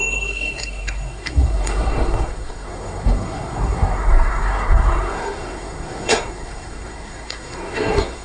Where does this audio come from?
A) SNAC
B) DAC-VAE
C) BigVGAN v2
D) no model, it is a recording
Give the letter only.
A